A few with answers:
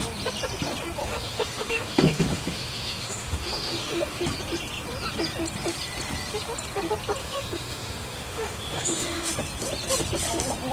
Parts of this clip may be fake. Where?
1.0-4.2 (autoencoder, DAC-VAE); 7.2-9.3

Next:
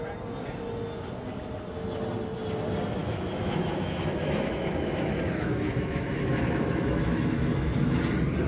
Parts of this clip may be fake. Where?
3.0-8.0 (autoencoder, DAC-VAE)

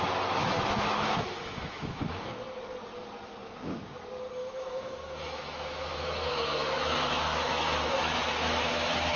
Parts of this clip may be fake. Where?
0.4-2.3 (autoencoder, DAC-VAE); 4.4-9.2

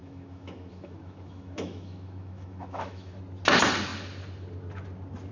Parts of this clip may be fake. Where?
0.0-3.2 (autoencoder, DAC-VAE)

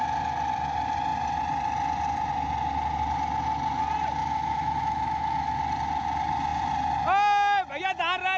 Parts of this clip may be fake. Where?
4.2-5.6 (autoencoder, DAC-VAE)